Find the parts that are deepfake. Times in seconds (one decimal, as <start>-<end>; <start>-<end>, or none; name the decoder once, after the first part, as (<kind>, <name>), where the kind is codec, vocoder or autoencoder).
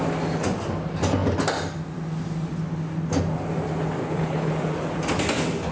4.0-4.5 (codec, HILCodec)